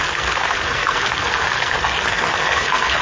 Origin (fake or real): fake